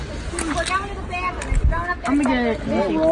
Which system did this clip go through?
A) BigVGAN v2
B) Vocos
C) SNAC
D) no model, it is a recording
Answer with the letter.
D